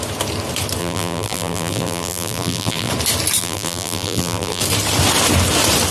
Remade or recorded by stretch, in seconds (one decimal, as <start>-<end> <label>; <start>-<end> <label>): 0.0-0.8 recorded; 0.8-2.9 remade; 2.9-3.4 recorded; 3.4-4.6 remade; 4.6-5.9 recorded